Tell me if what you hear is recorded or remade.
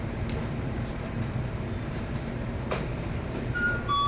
remade